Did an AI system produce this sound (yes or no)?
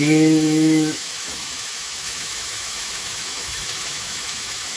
yes